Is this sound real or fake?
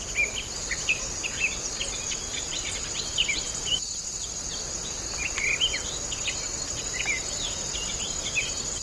fake